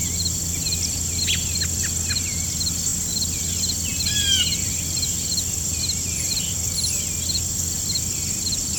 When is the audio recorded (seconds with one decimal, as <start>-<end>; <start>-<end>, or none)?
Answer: 0.0-8.8